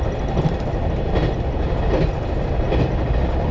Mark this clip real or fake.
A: real